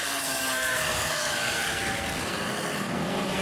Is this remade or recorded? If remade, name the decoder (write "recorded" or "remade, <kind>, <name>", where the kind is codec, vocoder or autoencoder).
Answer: remade, codec, SNAC